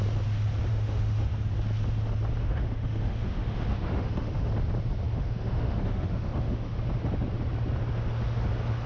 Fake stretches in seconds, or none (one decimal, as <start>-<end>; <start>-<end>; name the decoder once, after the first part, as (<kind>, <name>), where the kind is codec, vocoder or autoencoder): 0.7-1.3 (autoencoder, DAC-VAE); 2.4-4.5; 5.1-6.8